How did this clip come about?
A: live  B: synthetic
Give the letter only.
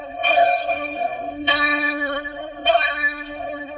B